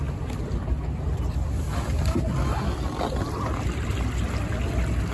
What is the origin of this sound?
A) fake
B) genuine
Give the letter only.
B